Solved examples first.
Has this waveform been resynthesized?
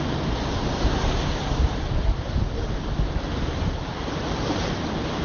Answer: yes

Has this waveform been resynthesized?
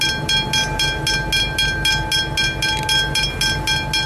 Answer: no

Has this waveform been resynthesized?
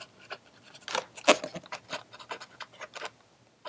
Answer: no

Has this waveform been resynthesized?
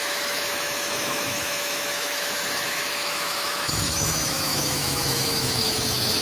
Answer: yes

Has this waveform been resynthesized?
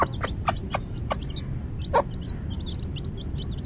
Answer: no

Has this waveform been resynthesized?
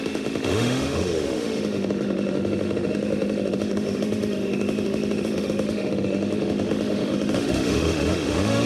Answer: yes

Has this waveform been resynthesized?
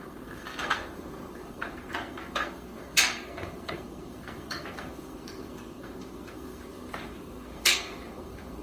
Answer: yes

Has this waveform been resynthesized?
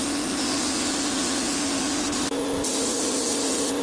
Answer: no